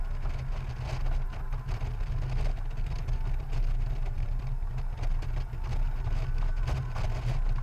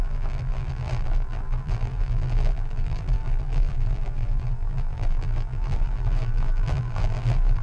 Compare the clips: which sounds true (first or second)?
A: first